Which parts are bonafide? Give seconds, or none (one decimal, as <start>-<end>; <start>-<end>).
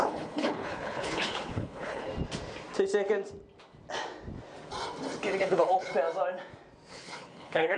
2.1-5.4; 5.9-6.9